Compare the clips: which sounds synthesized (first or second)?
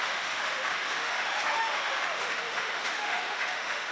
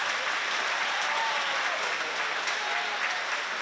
first